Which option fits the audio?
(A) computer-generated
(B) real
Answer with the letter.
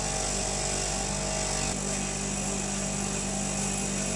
B